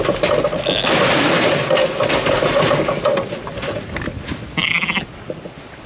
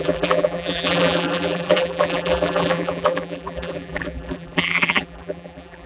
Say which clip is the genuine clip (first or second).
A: first